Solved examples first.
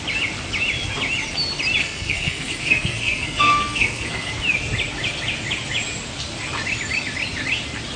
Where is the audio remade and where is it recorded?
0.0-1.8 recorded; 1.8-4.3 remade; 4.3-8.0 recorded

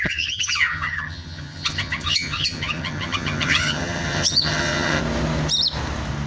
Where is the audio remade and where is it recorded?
0.0-5.0 remade; 5.0-6.3 recorded